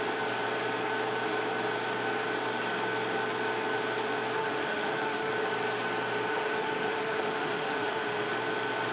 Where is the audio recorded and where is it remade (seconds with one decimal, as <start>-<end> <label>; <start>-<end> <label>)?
0.0-4.4 recorded; 4.4-5.3 remade; 5.3-6.3 recorded; 6.3-8.3 remade; 8.3-8.9 recorded